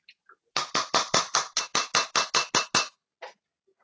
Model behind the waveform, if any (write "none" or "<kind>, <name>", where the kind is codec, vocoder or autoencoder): none